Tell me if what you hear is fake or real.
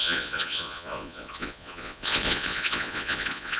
fake